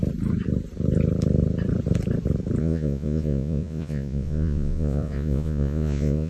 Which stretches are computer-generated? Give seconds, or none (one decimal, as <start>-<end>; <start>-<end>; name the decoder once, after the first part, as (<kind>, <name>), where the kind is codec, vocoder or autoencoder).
2.6-6.3 (vocoder, Vocos)